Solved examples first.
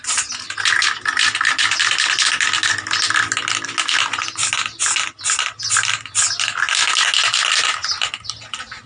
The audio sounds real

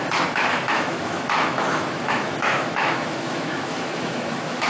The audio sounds fake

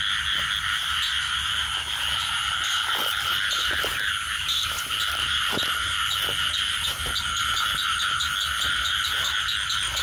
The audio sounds real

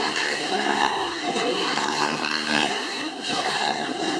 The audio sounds fake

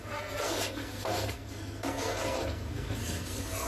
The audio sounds fake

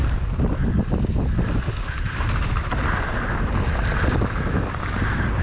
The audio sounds real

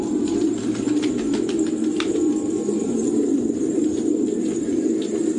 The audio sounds real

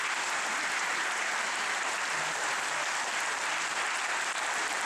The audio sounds real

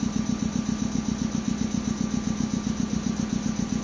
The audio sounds real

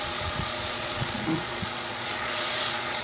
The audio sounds fake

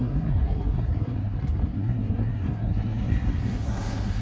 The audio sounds fake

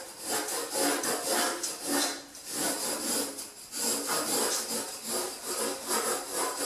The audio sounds real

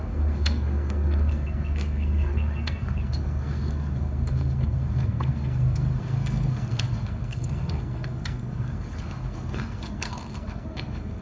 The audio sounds fake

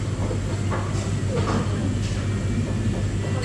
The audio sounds real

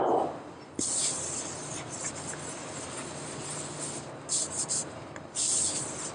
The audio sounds real